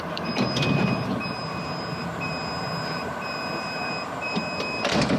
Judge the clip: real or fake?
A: fake